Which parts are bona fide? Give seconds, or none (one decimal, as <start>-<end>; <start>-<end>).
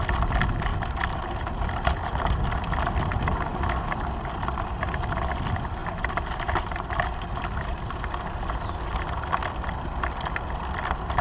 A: 0.0-5.8; 8.4-11.2